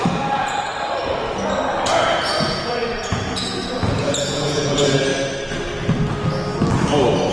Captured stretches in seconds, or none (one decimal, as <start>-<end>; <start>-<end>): 0.7-2.0; 5.1-7.3